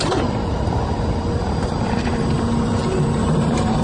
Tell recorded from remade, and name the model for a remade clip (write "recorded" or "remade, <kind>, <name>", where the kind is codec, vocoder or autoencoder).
remade, vocoder, BigVGAN v2